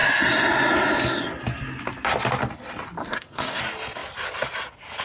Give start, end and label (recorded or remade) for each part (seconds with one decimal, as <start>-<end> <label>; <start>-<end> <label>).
0.0-3.0 recorded; 3.0-3.6 remade; 3.6-5.0 recorded